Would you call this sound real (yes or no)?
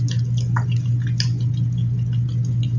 yes